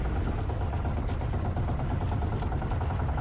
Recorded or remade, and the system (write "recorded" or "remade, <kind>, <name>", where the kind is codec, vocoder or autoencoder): recorded